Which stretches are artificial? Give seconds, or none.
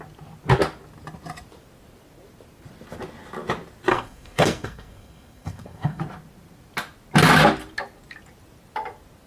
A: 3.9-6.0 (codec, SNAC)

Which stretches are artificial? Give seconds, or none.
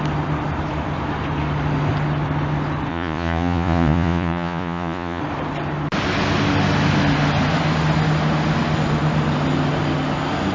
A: 2.9-5.2 (vocoder, Vocos)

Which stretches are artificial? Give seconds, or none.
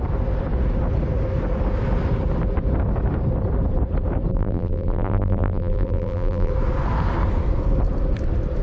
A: 4.3-6.5 (vocoder, BigVGAN v2)